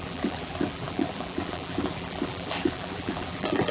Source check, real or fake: fake